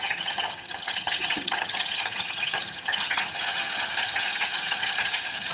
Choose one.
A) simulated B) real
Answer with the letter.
A